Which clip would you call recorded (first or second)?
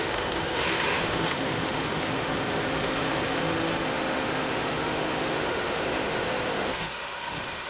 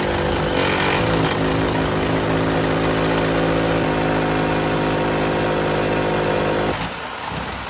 second